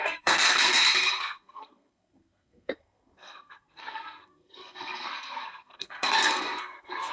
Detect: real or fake fake